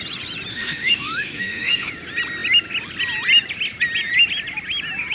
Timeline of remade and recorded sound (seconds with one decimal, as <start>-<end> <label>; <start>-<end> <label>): 0.0-0.5 recorded; 0.5-1.9 remade; 1.9-5.1 recorded